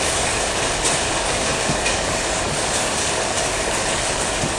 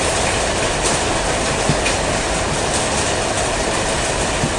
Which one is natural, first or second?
second